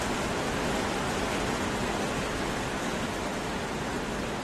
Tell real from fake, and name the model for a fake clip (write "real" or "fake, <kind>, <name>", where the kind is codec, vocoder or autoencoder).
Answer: real